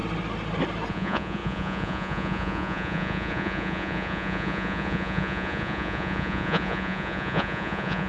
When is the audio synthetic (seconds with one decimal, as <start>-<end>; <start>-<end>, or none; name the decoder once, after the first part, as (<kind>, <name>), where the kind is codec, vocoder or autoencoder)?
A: 0.9-8.1 (vocoder, Vocos)